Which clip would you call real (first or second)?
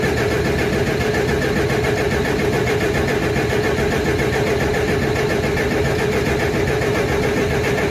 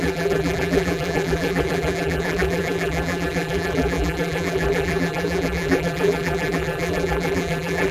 first